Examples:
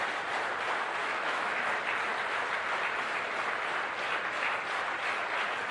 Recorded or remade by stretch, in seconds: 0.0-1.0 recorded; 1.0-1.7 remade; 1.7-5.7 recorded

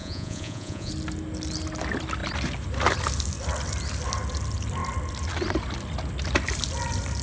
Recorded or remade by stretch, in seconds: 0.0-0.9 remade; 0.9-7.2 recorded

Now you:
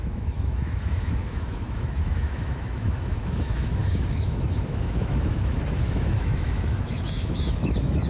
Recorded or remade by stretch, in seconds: 0.0-8.1 remade

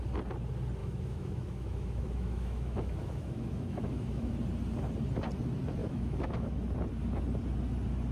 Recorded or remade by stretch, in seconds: 0.0-0.8 recorded; 0.8-4.3 remade; 4.3-5.8 recorded; 5.8-6.5 remade; 6.5-8.1 recorded